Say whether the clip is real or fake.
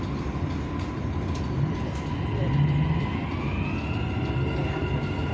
real